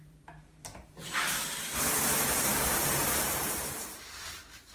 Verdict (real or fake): fake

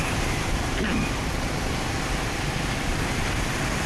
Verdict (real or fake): real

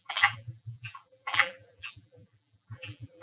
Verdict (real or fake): fake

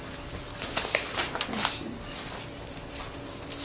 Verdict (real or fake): fake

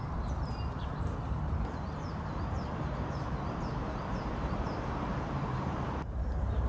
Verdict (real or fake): fake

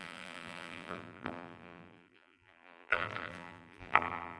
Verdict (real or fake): fake